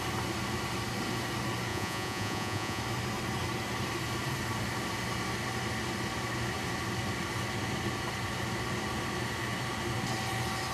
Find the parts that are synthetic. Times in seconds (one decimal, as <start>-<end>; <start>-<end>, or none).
1.7-2.8